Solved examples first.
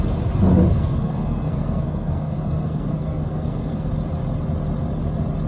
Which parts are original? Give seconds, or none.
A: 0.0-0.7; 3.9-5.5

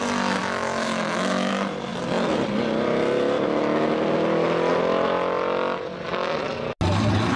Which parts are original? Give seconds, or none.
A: 0.0-0.4; 1.5-7.4

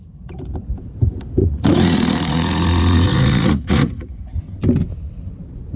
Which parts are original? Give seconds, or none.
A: 0.0-1.4; 4.2-5.8